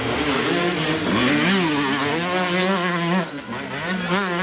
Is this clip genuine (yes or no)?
yes